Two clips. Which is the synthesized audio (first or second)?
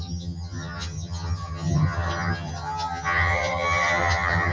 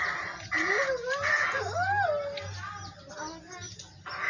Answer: first